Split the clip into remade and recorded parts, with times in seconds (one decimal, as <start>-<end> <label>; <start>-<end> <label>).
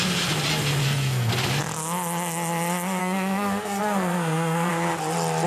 0.0-0.8 recorded; 0.8-1.3 remade; 1.3-3.0 recorded; 3.0-4.7 remade; 4.7-5.5 recorded